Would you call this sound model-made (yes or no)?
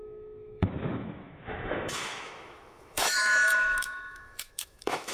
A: yes